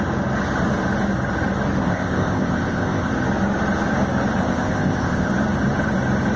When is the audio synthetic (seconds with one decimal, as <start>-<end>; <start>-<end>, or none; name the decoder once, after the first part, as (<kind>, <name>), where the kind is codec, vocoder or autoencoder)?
1.8-3.1 (codec, ZipCodec); 4.4-5.3